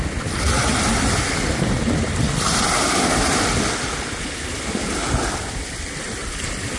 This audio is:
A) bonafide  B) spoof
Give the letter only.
A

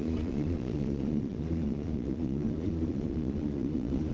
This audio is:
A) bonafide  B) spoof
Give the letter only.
B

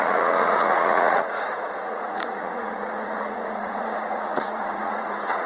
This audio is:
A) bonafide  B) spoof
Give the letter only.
B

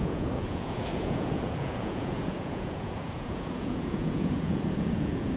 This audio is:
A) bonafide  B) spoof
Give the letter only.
B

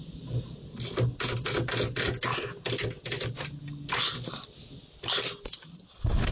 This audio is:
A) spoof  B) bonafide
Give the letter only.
B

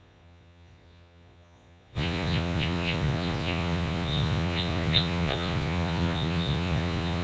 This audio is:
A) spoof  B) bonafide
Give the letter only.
A